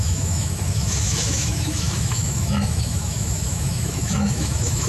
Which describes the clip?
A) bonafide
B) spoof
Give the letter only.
B